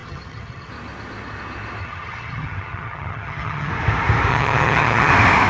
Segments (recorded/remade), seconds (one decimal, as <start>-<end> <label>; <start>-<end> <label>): 0.0-0.7 remade; 0.7-1.8 recorded; 1.8-3.7 remade; 3.7-4.3 recorded; 4.3-5.1 remade; 5.1-5.5 recorded